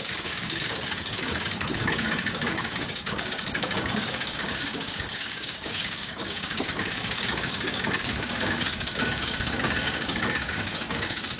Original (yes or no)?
no